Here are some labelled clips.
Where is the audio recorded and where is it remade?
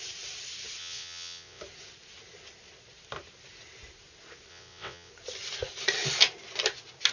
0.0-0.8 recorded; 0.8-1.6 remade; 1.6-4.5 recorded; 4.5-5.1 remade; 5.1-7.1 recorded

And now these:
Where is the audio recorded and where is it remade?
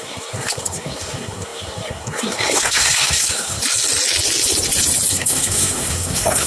0.0-3.6 remade; 3.6-5.1 recorded; 5.1-6.5 remade